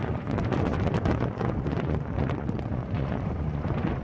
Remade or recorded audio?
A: remade